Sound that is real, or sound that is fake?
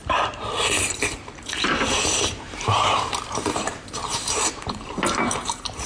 fake